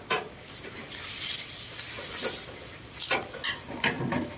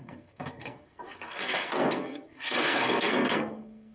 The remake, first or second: second